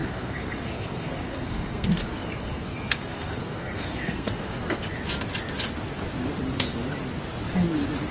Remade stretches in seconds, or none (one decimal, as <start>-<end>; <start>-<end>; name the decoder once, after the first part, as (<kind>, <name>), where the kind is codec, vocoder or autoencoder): 0.0-4.9 (codec, SNAC)